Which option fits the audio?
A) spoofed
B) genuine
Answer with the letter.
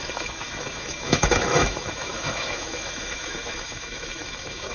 A